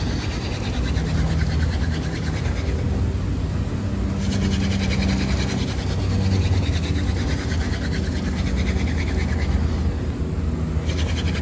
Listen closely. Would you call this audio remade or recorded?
recorded